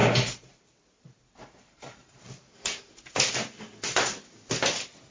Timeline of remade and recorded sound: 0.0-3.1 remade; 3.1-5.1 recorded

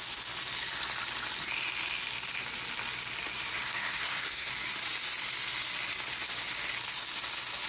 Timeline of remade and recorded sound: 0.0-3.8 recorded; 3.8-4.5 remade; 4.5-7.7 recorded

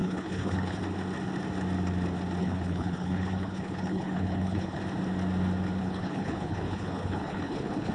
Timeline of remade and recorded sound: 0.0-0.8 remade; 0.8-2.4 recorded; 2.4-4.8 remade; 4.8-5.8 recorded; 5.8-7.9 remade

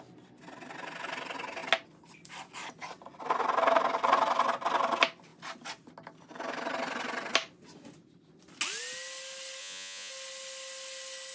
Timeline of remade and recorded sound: 0.0-9.6 recorded; 9.6-10.1 remade; 10.1-11.3 recorded

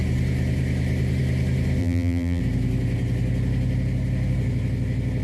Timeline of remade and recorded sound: 0.0-1.8 recorded; 1.8-2.4 remade; 2.4-5.2 recorded

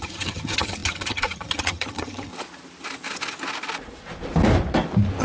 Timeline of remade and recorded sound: 0.0-2.3 remade; 2.3-5.2 recorded